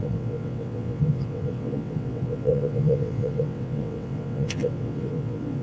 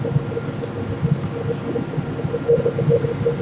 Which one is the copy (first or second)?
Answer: first